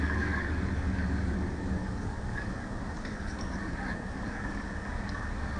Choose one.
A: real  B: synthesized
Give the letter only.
B